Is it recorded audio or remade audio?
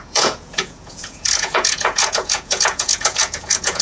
remade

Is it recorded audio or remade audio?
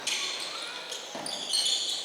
recorded